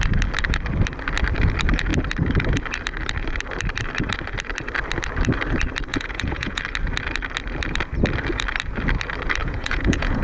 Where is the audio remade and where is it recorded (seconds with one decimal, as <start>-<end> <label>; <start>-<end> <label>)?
0.0-5.9 recorded; 5.9-6.6 remade; 6.6-9.4 recorded; 9.4-10.2 remade